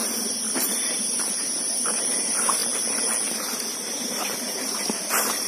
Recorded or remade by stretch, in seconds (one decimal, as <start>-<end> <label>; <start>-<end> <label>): 0.0-2.0 remade; 2.0-5.5 recorded